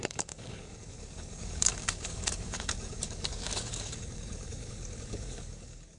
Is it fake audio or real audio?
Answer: fake